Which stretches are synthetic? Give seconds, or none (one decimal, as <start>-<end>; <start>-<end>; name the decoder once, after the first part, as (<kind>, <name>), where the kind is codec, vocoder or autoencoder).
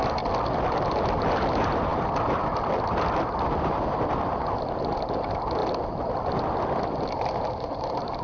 none